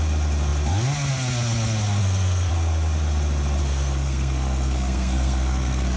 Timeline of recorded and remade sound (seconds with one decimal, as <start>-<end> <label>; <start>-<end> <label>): 0.0-2.0 recorded; 2.0-2.5 remade; 2.5-3.6 recorded; 3.6-6.0 remade